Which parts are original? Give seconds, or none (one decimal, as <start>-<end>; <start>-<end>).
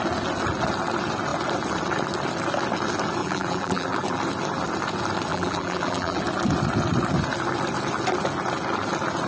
0.0-3.2; 4.2-5.3; 6.2-9.3